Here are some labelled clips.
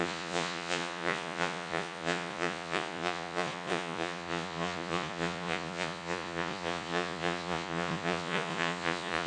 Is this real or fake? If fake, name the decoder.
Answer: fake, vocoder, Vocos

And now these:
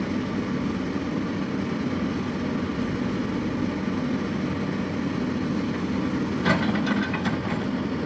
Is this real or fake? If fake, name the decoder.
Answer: real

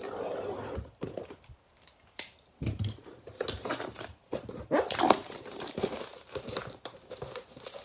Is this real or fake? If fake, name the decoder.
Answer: fake, vocoder, BigVGAN v2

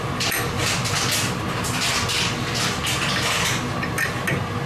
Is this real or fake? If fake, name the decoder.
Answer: real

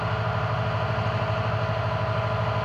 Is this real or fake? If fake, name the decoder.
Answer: real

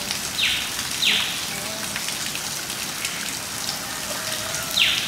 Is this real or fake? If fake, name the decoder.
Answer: real